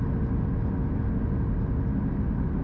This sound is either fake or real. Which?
real